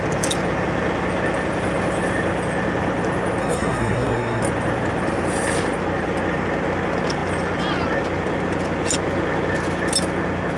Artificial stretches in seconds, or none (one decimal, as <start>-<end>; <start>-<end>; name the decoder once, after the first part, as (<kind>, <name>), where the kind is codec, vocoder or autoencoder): 3.4-4.4 (codec, SNAC)